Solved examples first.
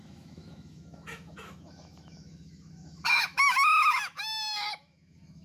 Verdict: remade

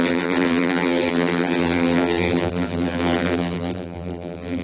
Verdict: remade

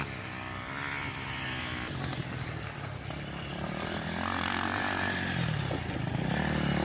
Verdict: recorded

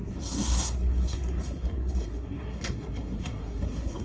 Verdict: remade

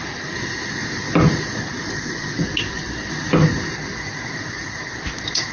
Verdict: recorded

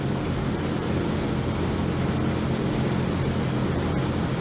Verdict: recorded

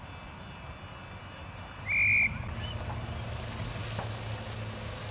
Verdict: recorded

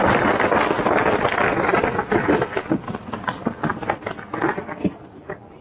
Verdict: recorded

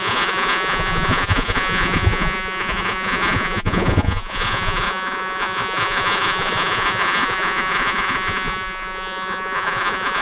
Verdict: remade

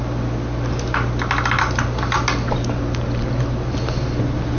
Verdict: recorded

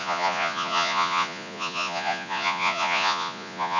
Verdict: remade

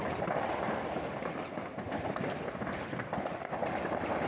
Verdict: recorded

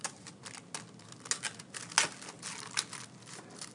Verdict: recorded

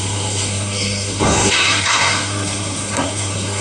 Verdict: remade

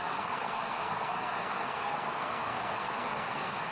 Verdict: remade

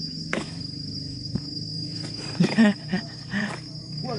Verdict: remade